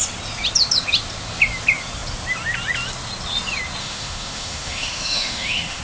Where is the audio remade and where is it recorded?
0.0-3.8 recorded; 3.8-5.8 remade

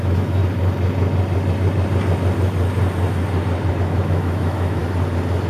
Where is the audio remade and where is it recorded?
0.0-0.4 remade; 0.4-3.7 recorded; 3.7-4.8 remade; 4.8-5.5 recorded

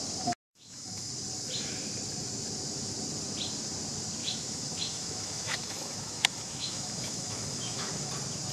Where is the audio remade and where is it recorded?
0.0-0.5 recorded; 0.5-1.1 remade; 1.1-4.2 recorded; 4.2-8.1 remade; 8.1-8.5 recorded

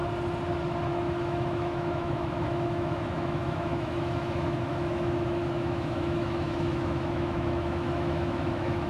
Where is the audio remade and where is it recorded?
0.0-0.9 recorded; 0.9-8.9 remade

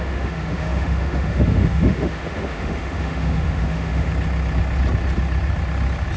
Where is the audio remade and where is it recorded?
0.0-4.1 remade; 4.1-6.2 recorded

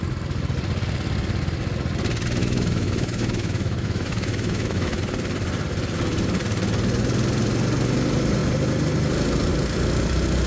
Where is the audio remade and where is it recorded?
0.0-2.4 recorded; 2.4-5.0 remade; 5.0-10.5 recorded

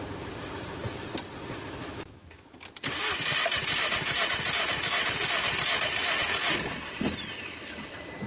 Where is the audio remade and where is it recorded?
0.0-1.8 recorded; 1.8-2.6 remade; 2.6-8.3 recorded